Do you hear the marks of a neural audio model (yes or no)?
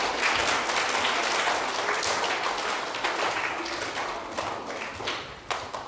no